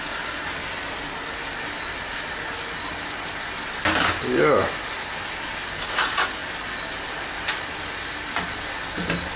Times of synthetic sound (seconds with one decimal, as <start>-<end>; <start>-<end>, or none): none